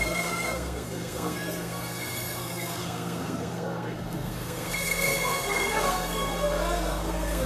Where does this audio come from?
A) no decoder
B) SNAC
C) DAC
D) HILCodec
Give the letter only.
B